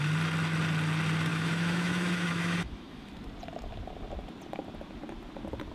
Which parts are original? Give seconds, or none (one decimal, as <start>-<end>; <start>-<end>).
0.0-1.3; 3.1-5.7